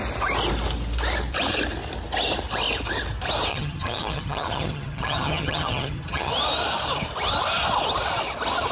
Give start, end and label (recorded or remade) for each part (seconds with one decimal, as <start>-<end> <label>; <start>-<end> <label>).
0.0-3.5 recorded; 3.5-6.3 remade; 6.3-8.7 recorded